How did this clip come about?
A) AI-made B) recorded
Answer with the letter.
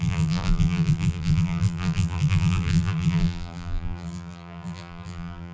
A